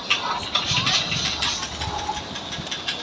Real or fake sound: real